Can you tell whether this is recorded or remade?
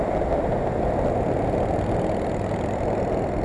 recorded